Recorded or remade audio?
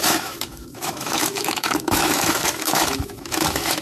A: remade